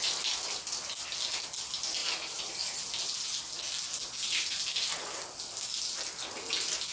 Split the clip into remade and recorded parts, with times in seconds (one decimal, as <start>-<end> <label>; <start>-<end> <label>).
0.0-6.9 recorded